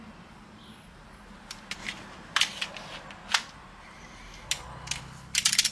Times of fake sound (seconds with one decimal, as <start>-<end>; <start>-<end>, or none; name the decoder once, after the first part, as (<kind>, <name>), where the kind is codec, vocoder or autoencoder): none